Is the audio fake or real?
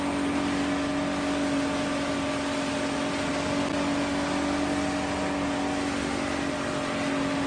real